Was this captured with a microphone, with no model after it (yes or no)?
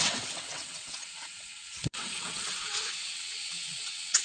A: no